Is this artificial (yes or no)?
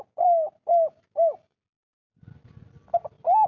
no